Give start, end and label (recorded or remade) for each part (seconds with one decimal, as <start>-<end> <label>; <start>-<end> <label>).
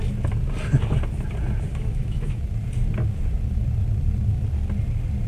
0.0-1.7 recorded; 1.7-2.4 remade; 2.4-5.3 recorded